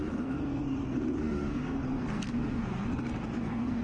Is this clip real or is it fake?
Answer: fake